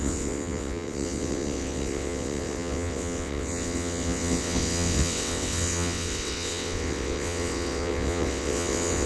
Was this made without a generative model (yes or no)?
no